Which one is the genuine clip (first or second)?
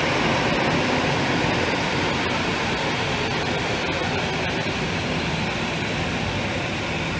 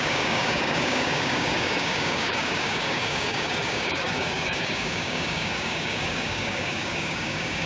first